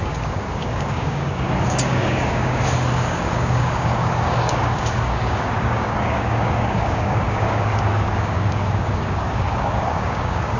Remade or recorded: remade